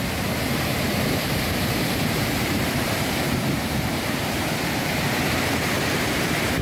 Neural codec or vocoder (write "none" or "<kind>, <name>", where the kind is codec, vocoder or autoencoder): vocoder, BigVGAN v2